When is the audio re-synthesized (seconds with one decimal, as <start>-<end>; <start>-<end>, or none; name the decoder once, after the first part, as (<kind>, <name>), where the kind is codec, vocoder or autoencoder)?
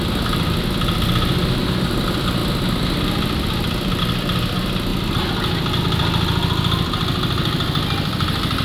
none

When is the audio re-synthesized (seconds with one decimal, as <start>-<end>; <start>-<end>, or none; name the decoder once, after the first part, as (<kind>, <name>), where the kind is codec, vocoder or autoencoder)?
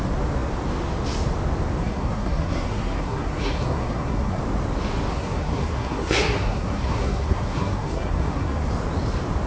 1.8-4.4 (codec, SNAC); 5.1-8.7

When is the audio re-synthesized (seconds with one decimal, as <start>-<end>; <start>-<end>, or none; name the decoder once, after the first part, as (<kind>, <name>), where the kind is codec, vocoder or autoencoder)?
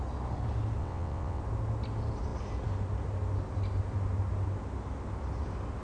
0.8-1.4 (vocoder, WaveNeXt)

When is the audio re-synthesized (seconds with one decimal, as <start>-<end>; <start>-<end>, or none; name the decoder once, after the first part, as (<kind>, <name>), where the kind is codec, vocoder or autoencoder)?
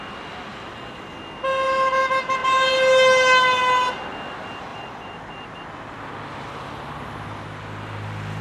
0.5-1.2 (vocoder, BigVGAN v2); 4.7-6.0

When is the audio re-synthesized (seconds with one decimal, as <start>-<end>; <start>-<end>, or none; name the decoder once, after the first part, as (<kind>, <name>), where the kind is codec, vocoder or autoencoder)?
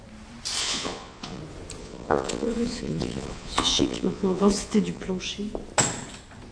0.6-1.4 (vocoder, Vocos); 1.8-5.3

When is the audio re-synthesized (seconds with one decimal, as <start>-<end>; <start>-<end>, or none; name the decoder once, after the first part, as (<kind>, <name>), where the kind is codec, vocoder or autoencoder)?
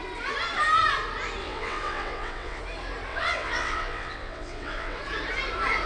1.4-2.6 (vocoder, WaveNeXt); 3.1-5.0